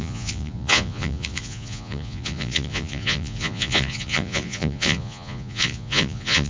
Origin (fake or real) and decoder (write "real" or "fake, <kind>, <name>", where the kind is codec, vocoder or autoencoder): fake, vocoder, Vocos